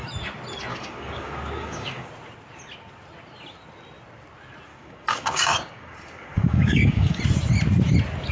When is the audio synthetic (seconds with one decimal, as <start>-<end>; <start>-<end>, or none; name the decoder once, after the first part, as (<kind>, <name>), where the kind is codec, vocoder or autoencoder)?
0.7-2.1 (codec, DAC); 4.7-7.2